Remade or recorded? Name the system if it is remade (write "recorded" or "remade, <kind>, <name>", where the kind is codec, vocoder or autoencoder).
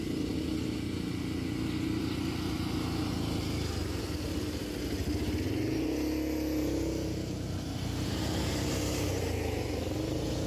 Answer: recorded